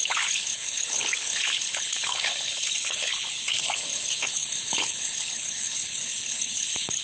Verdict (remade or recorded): remade